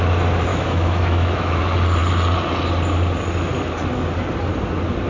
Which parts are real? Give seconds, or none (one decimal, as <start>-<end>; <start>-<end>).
0.0-0.5; 1.6-5.1